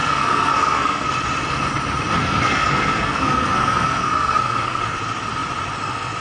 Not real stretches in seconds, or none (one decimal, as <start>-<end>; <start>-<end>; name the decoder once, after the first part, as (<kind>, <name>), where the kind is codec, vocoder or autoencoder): 0.0-1.1 (codec, SNAC); 2.2-4.8